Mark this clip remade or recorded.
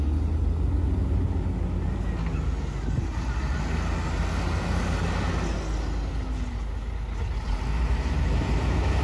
recorded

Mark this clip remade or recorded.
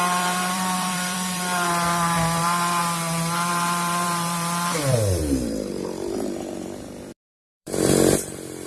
remade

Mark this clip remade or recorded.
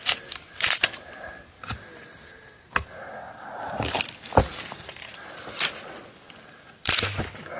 recorded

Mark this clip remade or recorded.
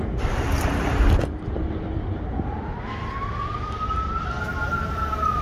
recorded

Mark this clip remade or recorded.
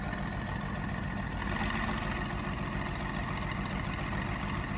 recorded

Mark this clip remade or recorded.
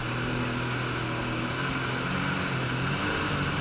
recorded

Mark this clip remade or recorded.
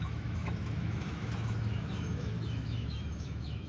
remade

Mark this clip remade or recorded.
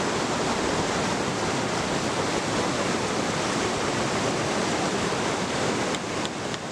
recorded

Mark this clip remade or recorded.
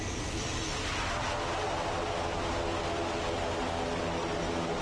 recorded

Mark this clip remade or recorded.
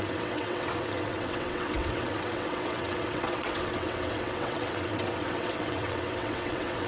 remade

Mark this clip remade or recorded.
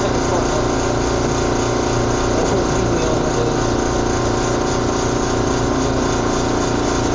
recorded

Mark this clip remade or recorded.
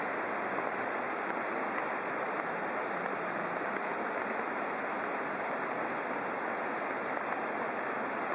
recorded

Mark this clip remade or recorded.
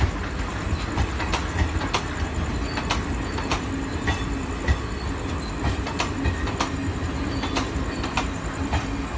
recorded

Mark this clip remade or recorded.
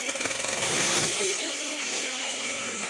remade